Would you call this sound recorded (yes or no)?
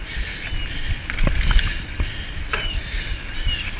yes